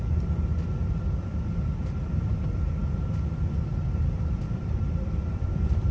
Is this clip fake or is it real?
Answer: fake